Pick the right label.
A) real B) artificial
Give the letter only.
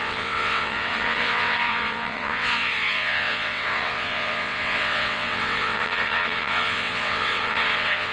B